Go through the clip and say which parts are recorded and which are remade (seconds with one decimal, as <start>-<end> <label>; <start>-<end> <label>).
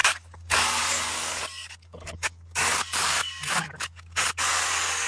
0.0-5.1 remade